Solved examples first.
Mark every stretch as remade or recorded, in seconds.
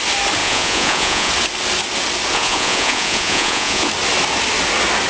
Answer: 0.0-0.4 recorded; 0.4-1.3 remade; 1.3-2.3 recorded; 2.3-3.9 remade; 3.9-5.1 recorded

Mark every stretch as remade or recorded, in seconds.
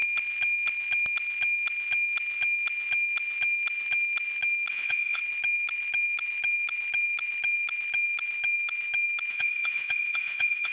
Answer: 0.0-4.7 recorded; 4.7-5.2 remade; 5.2-9.3 recorded; 9.3-10.7 remade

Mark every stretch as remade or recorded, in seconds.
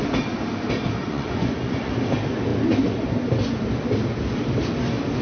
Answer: 0.0-1.0 recorded; 1.0-1.9 remade; 1.9-5.2 recorded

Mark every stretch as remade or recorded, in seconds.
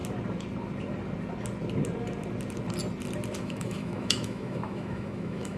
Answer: 0.0-3.4 recorded; 3.4-5.6 remade